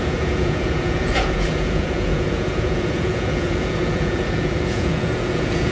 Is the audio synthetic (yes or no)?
yes